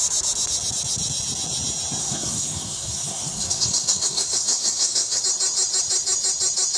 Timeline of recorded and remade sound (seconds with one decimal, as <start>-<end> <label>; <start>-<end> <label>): 0.0-2.0 recorded; 2.0-5.2 remade; 5.2-6.8 recorded